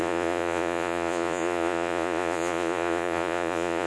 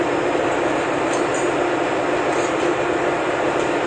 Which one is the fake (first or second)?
first